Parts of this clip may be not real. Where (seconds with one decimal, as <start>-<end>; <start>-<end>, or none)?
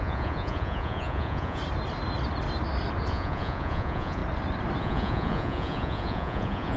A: 0.0-1.6; 3.1-4.2; 4.8-6.8